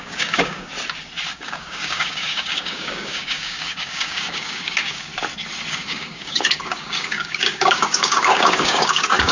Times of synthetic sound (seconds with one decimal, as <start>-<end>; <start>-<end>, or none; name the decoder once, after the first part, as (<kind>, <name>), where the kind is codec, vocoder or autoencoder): 0.0-0.7 (codec, DAC); 1.3-5.1; 5.7-9.3